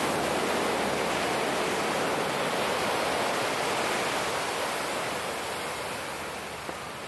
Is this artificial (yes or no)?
no